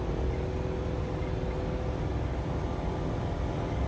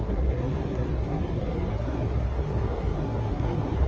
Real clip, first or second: first